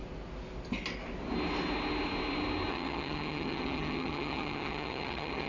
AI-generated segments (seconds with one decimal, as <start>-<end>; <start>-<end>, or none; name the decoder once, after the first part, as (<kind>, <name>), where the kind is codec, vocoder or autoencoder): 2.7-5.5 (vocoder, HiFi-GAN)